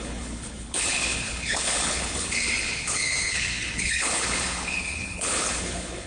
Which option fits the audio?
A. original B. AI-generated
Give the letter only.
B